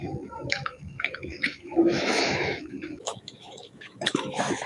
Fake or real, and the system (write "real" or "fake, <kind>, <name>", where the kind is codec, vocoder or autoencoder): fake, autoencoder, DAC-VAE